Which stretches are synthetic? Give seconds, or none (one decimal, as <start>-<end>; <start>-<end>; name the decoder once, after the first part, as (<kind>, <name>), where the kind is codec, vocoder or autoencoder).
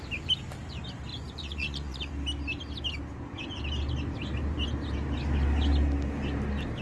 1.1-2.1 (vocoder, Vocos)